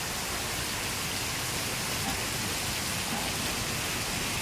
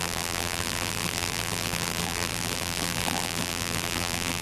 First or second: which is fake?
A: second